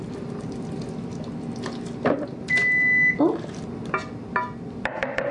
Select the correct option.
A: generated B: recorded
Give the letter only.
B